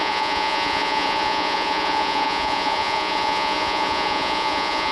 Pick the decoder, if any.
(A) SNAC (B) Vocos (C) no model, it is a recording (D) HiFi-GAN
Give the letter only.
B